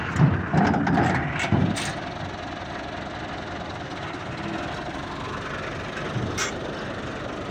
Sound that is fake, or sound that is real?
real